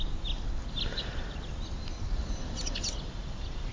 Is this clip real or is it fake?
real